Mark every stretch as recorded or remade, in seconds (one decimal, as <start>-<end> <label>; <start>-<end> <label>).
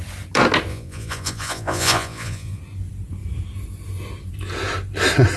0.0-0.7 recorded; 0.7-2.6 remade; 2.6-5.4 recorded